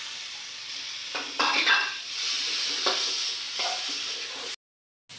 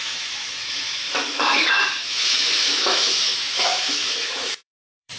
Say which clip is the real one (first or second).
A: first